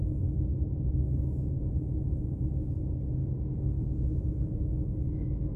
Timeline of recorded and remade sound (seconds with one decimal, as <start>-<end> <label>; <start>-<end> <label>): 0.0-3.2 recorded; 3.2-3.8 remade; 3.8-5.6 recorded